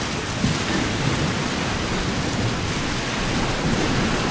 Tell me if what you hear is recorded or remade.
recorded